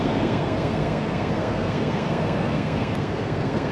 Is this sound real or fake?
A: fake